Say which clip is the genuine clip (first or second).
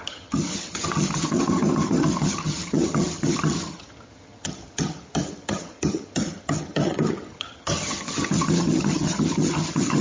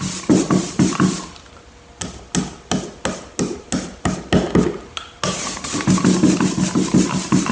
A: second